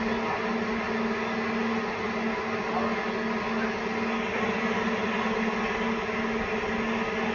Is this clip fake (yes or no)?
no